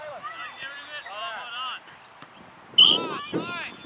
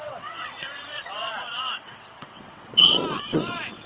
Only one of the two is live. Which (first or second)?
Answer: first